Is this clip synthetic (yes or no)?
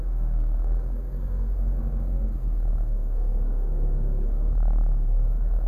yes